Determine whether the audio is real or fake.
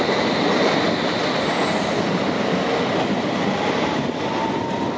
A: real